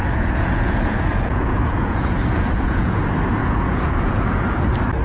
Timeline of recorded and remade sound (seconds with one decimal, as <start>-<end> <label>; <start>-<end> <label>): 0.0-3.0 remade; 3.0-3.4 recorded; 3.4-4.6 remade; 4.6-5.0 recorded